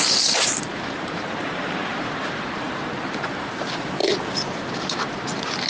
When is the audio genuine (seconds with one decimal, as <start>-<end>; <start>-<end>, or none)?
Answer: 4.0-4.8